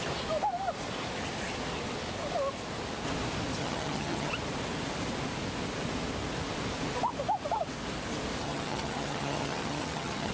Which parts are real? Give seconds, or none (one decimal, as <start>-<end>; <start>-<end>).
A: 0.0-3.6; 4.3-8.4

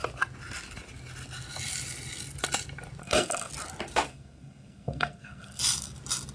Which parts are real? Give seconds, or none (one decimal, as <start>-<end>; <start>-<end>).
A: 0.0-3.0; 3.5-4.1; 5.6-6.3